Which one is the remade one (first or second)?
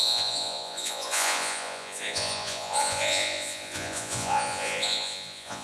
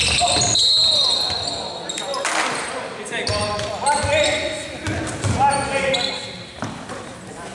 first